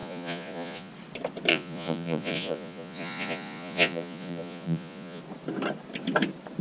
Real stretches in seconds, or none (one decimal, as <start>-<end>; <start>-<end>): 0.9-1.5; 5.2-6.6